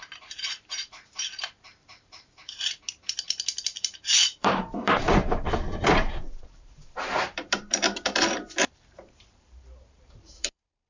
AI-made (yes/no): yes